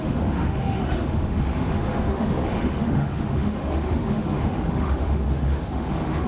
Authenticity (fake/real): fake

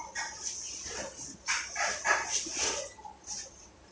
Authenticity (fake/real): real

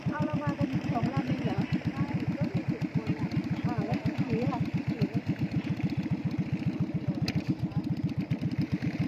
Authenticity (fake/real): real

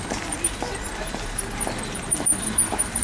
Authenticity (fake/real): real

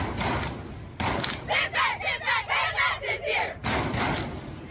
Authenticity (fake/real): real